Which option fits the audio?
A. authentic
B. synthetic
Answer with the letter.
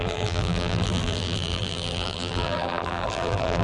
B